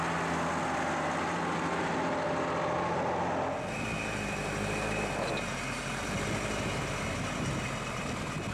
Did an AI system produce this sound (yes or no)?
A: no